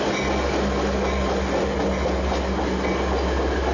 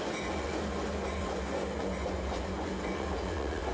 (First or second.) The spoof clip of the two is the second